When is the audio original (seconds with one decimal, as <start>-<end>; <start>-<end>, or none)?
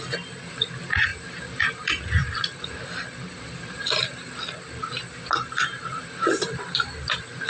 0.0-1.1; 1.9-2.5; 4.0-4.8; 6.9-7.5